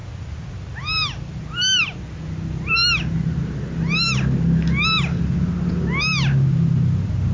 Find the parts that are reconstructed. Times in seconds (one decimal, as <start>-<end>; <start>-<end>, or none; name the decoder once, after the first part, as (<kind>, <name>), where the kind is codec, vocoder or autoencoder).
none